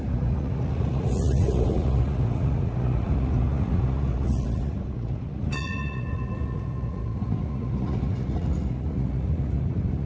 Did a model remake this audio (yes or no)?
yes